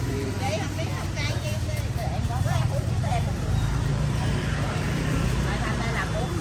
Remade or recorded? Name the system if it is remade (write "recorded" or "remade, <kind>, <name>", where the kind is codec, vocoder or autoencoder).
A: remade, vocoder, BigVGAN v2